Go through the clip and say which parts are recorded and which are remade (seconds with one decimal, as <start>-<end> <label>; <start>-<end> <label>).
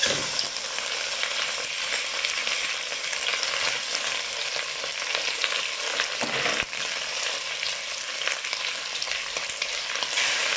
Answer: 0.0-3.3 remade; 3.3-3.9 recorded; 3.9-10.6 remade